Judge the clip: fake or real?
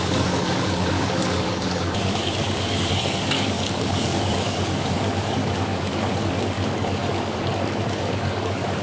fake